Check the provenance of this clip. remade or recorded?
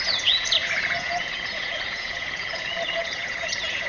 remade